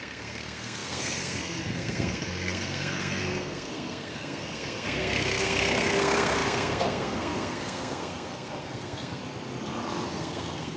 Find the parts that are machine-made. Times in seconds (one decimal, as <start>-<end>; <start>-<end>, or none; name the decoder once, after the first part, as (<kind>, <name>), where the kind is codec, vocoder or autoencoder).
0.0-9.2 (codec, SNAC); 10.1-10.8